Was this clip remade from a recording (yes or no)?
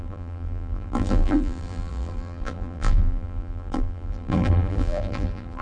yes